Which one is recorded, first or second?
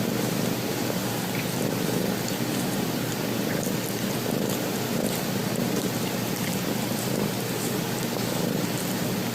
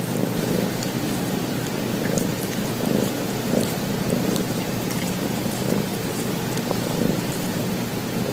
first